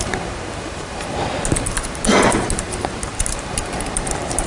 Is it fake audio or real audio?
fake